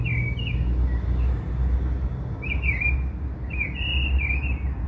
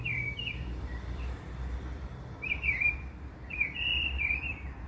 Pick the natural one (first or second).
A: first